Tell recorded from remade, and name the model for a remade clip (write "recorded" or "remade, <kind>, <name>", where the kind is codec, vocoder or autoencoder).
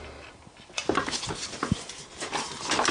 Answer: recorded